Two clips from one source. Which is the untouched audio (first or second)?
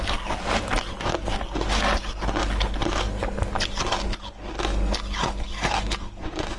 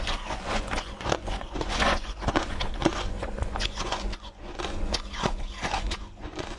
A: first